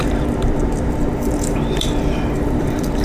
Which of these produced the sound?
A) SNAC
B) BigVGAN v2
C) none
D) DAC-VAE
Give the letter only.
B